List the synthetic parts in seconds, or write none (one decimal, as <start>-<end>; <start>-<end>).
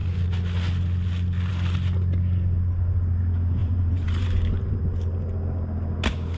3.6-4.8